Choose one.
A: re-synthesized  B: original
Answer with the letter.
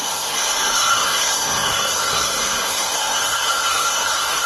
A